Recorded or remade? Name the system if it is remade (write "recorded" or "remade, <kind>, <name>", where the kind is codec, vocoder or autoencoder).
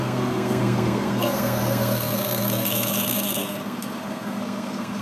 remade, codec, SNAC